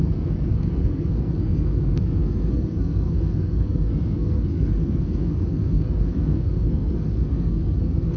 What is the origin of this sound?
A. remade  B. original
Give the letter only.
A